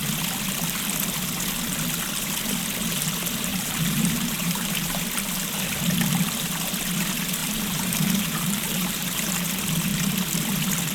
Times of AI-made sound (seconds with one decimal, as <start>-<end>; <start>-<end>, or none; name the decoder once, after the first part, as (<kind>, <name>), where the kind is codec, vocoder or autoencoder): 3.5-5.0 (vocoder, BigVGAN v2); 7.4-9.3